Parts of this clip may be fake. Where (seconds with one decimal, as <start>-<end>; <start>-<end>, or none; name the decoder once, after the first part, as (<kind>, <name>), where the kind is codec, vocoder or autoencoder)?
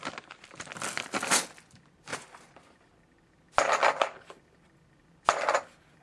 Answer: 2.1-2.9 (vocoder, BigVGAN v2)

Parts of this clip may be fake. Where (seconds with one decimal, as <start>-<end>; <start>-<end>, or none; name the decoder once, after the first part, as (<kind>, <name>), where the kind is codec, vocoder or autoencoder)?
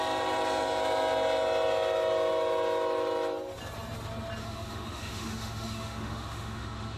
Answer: 4.4-7.0 (autoencoder, DAC-VAE)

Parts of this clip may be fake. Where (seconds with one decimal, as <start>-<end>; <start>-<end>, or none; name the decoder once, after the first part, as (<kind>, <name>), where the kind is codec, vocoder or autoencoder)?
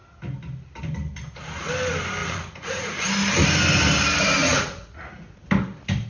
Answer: 2.2-3.0 (vocoder, Vocos); 4.4-5.4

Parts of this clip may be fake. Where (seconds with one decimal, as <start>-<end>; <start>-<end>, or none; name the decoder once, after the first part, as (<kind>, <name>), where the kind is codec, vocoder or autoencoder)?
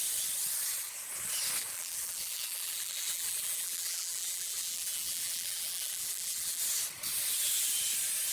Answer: 1.6-6.6 (vocoder, BigVGAN v2)